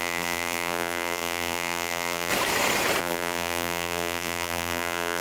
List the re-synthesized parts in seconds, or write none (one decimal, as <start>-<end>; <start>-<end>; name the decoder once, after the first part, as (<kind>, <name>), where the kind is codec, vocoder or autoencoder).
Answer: 0.0-2.3 (vocoder, BigVGAN v2); 3.0-5.2